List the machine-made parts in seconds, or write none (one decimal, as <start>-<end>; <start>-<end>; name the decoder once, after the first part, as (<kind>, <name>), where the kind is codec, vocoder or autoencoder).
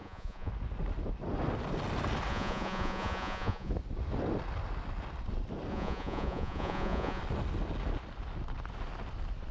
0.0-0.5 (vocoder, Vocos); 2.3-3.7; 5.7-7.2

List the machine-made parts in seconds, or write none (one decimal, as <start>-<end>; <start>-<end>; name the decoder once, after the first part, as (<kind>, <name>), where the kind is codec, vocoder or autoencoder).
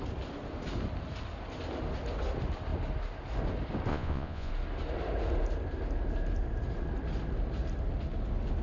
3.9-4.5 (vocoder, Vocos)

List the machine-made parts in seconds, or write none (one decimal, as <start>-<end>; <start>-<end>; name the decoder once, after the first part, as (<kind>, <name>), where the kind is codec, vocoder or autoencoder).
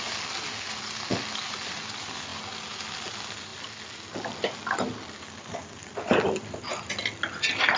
none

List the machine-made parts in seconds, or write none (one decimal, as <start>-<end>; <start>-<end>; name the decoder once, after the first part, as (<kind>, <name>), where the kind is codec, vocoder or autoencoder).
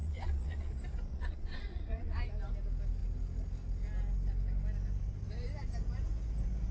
0.0-0.7 (vocoder, Vocos); 1.1-2.2